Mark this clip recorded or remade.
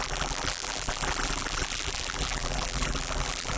remade